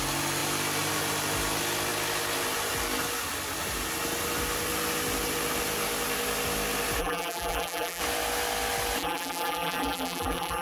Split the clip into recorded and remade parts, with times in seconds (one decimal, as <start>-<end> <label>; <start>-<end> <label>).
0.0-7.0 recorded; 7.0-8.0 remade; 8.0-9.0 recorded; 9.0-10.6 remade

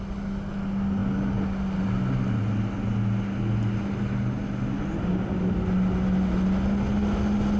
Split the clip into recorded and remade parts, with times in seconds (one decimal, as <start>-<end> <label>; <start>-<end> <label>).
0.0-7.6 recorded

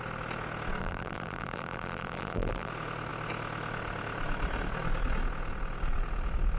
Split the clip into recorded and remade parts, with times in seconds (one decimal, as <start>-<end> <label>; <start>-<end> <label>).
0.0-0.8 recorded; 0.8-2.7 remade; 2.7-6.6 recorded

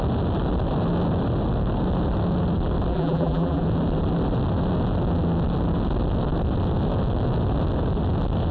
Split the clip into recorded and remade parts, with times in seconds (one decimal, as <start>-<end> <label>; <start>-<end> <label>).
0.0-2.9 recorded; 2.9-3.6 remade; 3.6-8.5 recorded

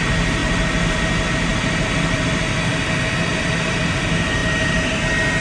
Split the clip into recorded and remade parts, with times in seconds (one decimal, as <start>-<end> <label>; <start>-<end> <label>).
0.0-0.4 recorded; 0.4-1.0 remade; 1.0-3.3 recorded; 3.3-3.8 remade; 3.8-4.4 recorded; 4.4-5.0 remade; 5.0-5.4 recorded

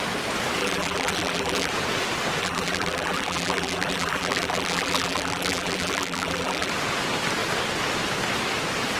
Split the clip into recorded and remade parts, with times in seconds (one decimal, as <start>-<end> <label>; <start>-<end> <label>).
0.0-0.6 recorded; 0.6-1.7 remade; 1.7-2.4 recorded; 2.4-6.7 remade; 6.7-9.0 recorded

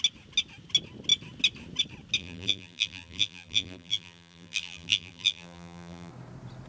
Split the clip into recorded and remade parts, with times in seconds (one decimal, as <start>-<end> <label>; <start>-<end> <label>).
0.0-2.2 recorded; 2.2-6.1 remade; 6.1-6.7 recorded

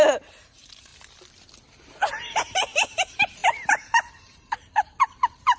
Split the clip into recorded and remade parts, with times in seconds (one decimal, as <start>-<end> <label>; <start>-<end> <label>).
0.0-0.9 remade; 0.9-2.2 recorded; 2.2-5.6 remade